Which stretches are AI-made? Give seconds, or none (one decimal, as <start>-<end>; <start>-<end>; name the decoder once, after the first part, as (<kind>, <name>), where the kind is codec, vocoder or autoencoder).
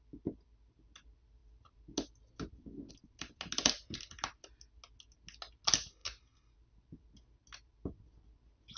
none